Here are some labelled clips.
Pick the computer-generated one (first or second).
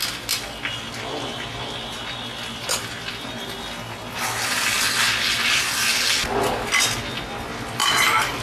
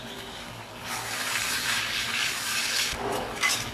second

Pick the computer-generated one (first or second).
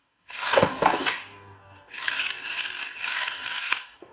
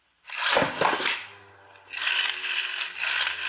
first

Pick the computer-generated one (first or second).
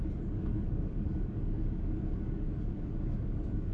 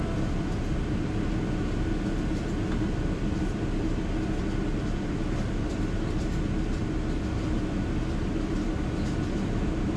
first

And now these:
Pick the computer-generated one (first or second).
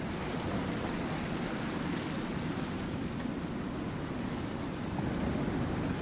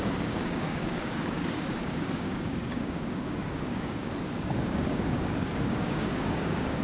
second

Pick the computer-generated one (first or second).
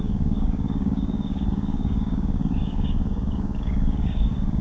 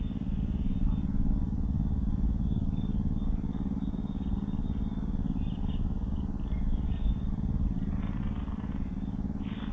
first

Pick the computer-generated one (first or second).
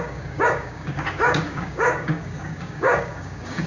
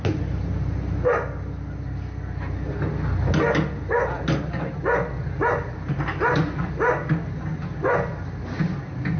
first